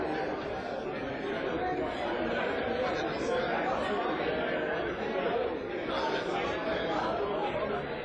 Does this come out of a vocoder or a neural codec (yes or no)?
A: no